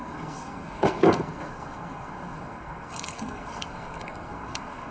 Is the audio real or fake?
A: fake